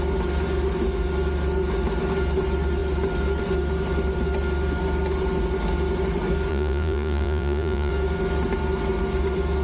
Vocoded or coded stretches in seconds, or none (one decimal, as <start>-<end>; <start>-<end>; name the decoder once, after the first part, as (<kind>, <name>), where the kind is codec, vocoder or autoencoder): 6.5-7.9 (vocoder, Vocos)

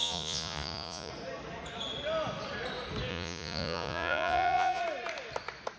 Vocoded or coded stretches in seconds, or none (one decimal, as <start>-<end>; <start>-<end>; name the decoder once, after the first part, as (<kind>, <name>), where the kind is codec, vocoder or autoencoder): 0.0-1.1 (vocoder, Vocos); 3.1-4.8

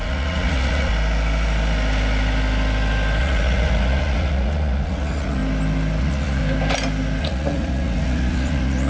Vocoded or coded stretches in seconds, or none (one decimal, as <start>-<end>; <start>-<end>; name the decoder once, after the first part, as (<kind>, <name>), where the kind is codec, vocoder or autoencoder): 0.0-0.9 (vocoder, Vocos); 3.2-5.4; 6.0-6.4; 7.2-8.9

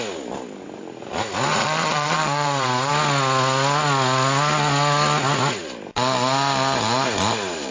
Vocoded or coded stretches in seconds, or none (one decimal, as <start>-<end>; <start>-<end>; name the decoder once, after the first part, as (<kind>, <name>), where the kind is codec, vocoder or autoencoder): 1.5-2.9 (vocoder, Vocos)